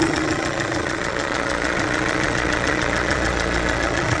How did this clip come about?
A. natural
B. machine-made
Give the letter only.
B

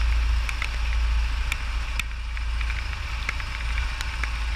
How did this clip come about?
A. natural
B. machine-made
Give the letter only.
A